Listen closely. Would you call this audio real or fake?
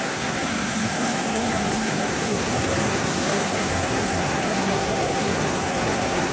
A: fake